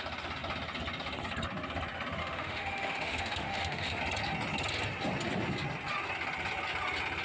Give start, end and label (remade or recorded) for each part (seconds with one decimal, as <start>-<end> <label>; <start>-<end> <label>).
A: 0.0-2.2 recorded; 2.2-4.0 remade; 4.0-7.2 recorded

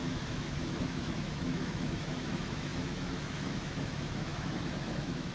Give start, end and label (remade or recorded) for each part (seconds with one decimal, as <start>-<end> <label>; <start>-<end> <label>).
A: 0.0-5.3 remade

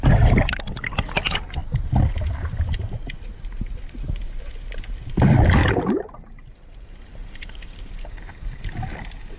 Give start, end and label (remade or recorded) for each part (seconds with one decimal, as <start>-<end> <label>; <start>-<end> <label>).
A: 0.0-5.6 recorded; 5.6-8.5 remade; 8.5-9.4 recorded

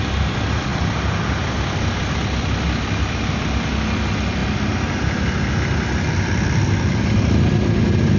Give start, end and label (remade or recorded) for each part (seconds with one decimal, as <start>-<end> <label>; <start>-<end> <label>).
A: 0.0-8.2 recorded